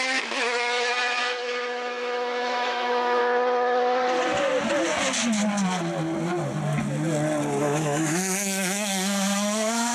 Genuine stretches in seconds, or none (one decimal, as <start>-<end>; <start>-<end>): 3.2-7.6